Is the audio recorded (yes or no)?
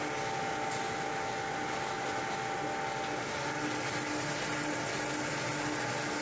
yes